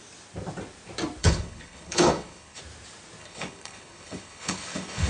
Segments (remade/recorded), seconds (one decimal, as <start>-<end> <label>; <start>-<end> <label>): 0.0-1.2 recorded; 1.2-2.6 remade; 2.6-3.2 recorded; 3.2-5.1 remade